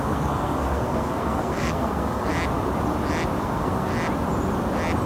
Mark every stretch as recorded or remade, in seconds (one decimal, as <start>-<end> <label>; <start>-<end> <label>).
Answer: 0.0-2.3 remade; 2.3-3.4 recorded; 3.4-3.9 remade; 3.9-5.1 recorded